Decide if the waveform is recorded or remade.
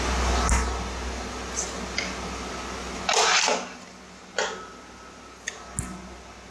recorded